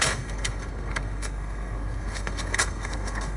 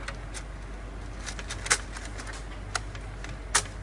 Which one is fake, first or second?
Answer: first